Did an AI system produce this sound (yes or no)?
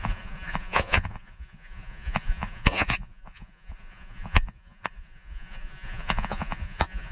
yes